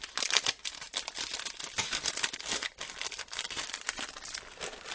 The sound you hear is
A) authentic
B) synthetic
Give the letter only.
A